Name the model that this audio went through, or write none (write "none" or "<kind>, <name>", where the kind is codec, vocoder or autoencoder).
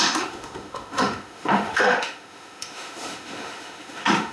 autoencoder, DAC-VAE